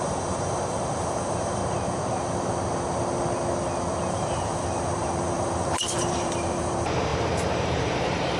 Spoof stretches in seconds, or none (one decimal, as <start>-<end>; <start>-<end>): 0.0-1.6; 4.1-8.4